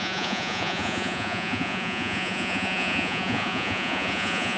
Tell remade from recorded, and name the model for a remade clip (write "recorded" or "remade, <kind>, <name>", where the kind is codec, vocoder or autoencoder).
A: remade, vocoder, Vocos